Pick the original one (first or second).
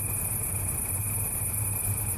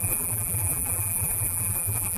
first